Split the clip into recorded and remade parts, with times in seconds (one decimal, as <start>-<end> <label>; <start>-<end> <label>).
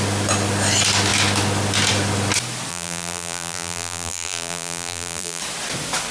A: 0.0-2.7 recorded; 2.7-5.4 remade; 5.4-6.1 recorded